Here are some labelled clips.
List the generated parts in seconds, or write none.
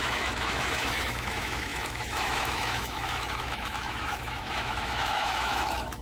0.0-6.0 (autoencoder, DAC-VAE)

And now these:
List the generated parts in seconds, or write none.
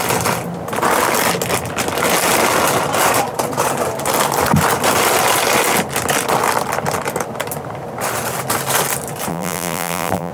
9.3-10.3 (vocoder, BigVGAN v2)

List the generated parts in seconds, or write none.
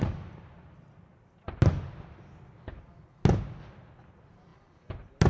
none